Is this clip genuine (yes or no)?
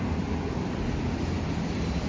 yes